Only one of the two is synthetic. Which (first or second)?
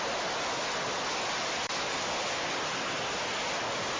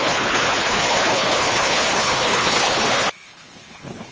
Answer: second